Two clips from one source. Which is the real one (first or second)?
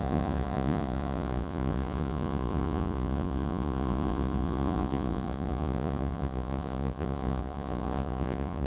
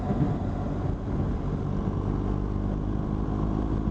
second